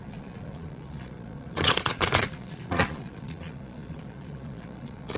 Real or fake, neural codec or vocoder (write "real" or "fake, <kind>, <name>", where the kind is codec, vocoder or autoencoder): fake, vocoder, Vocos